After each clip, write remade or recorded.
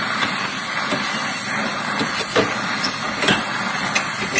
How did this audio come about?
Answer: recorded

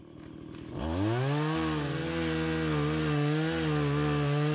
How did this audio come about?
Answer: recorded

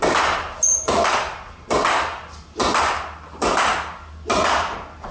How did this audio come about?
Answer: recorded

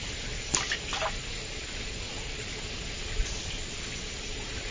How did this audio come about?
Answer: recorded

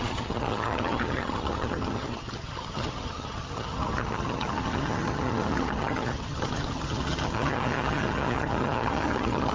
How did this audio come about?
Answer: remade